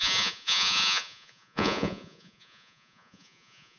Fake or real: fake